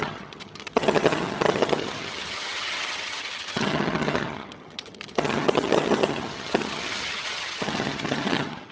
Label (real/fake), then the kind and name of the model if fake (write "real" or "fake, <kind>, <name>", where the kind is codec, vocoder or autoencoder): fake, vocoder, HiFi-GAN